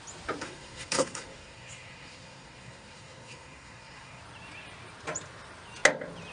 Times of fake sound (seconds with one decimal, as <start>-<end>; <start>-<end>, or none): 0.4-4.2

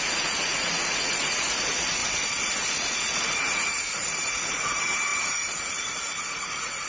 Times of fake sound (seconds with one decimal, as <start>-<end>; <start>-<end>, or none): 0.0-2.0; 2.7-6.9

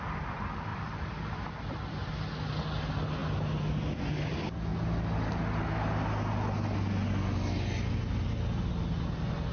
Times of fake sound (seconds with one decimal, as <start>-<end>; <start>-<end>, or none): 0.7-2.1

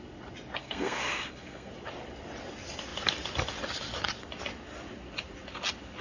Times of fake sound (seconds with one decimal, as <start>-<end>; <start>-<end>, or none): 0.6-1.7

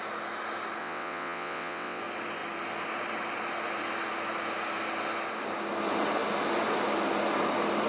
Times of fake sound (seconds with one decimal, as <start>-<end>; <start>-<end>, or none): 0.8-2.0

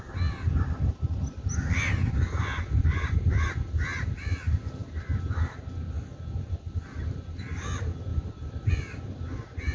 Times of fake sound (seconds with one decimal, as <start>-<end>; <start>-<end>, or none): 8.1-8.7